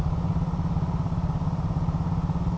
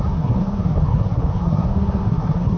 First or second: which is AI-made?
second